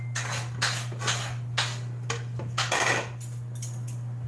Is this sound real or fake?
real